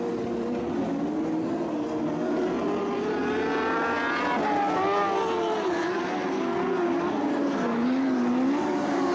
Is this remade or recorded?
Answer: recorded